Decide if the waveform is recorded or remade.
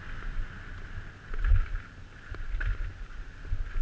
recorded